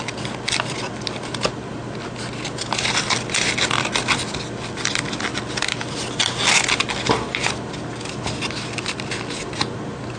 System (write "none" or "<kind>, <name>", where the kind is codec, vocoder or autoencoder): none